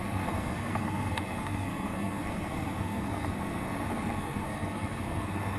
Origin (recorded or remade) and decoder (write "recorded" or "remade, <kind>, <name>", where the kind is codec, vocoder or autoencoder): remade, codec, SNAC